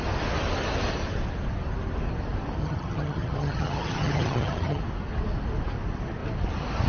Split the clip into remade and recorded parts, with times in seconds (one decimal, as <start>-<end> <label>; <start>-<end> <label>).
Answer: 0.0-2.6 recorded; 2.6-4.8 remade; 4.8-6.9 recorded